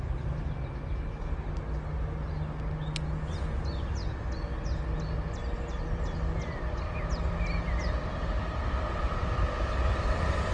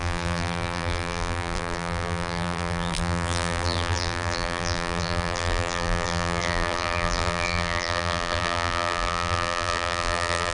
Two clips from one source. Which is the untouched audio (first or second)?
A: first